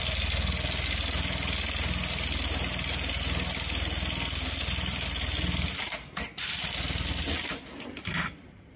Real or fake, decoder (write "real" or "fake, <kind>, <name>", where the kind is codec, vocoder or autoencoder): real